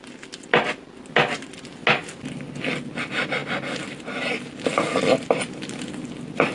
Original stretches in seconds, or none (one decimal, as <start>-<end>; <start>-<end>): 0.0-6.5